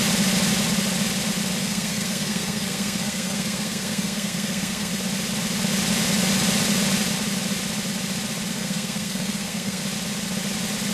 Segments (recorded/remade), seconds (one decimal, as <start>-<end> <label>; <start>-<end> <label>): 0.0-1.6 recorded; 1.6-4.9 remade; 4.9-8.5 recorded; 8.5-9.8 remade; 9.8-10.9 recorded